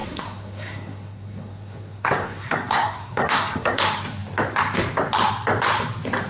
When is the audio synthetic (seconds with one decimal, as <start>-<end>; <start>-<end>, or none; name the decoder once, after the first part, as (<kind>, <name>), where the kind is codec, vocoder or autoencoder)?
0.0-3.8 (codec, SNAC)